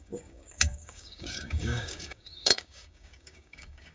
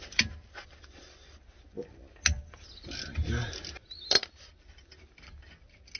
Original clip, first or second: second